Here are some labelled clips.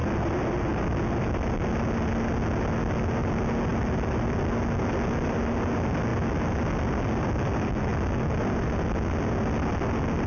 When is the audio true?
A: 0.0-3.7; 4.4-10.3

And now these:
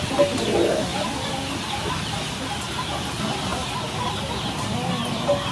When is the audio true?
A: 0.0-0.9; 1.4-5.5

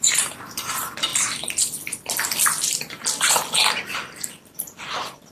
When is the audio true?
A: 1.1-4.3

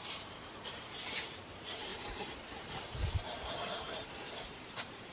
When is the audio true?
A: none

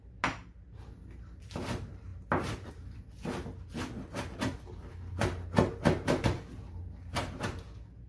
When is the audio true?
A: 0.0-8.1

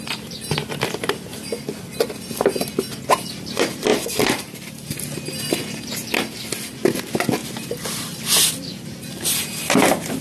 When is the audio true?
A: 0.0-3.9; 5.0-7.4; 8.5-10.2